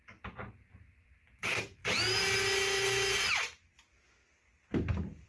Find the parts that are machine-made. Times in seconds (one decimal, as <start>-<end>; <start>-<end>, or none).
none